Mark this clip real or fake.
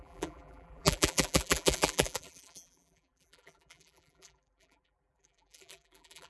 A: fake